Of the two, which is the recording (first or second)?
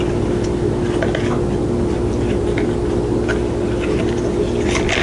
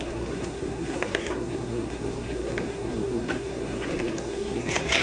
first